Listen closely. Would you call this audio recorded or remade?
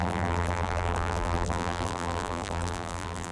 remade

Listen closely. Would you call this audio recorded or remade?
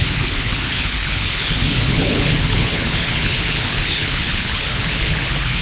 remade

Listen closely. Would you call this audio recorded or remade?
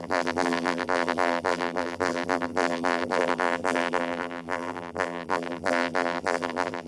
remade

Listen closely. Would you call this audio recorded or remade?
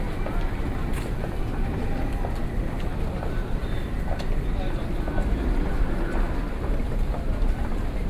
recorded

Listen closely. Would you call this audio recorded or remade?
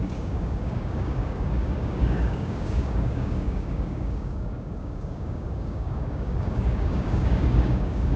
remade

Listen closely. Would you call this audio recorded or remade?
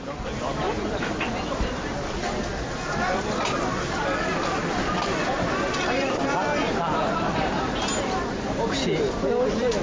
recorded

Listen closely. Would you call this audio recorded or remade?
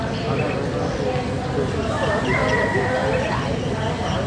recorded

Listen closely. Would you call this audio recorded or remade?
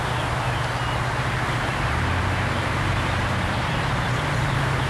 remade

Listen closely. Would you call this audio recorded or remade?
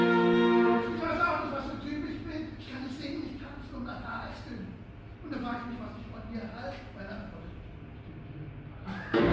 recorded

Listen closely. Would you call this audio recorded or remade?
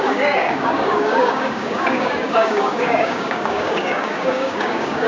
remade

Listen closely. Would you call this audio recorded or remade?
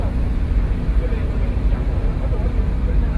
recorded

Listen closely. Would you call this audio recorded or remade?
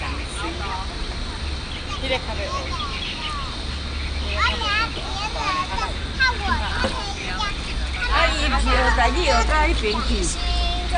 recorded